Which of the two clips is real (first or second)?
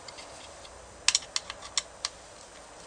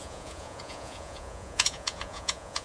first